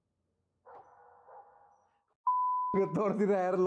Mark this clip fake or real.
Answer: real